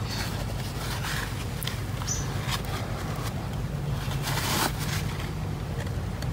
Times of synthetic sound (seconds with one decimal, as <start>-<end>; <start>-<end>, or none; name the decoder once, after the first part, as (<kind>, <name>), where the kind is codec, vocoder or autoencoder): none